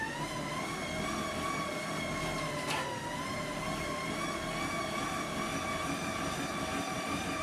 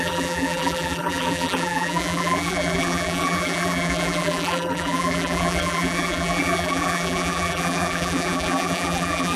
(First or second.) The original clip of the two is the first